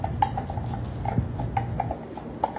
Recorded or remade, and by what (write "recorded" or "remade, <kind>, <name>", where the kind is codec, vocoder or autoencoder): recorded